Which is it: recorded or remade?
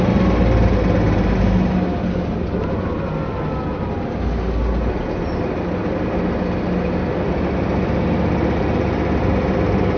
recorded